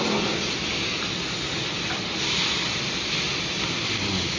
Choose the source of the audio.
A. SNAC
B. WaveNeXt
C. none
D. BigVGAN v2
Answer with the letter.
C